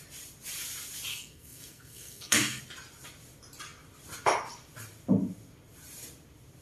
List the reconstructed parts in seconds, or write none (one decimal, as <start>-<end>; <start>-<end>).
1.1-2.6